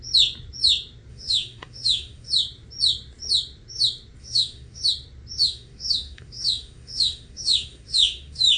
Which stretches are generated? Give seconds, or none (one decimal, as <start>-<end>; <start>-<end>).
1.1-2.3; 4.2-4.8; 5.4-8.6